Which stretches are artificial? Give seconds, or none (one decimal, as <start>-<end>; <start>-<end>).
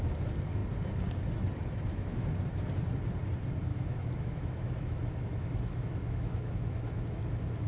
1.9-2.6; 3.7-7.2